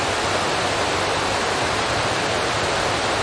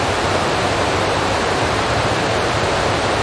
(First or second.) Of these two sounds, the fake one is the second